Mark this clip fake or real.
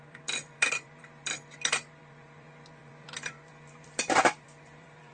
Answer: fake